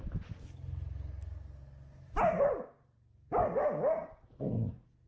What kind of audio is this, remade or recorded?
recorded